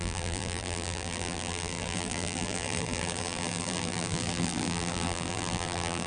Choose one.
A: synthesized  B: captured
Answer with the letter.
A